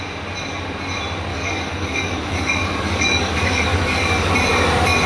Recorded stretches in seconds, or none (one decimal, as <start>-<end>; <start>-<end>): 0.0-1.3; 4.3-5.1